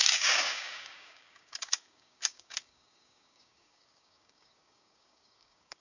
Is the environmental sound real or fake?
fake